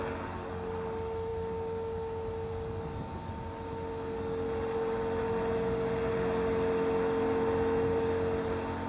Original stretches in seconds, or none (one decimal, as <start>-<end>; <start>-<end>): 0.0-8.9